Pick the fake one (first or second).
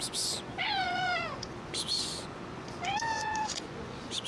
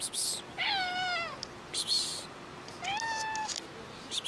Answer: first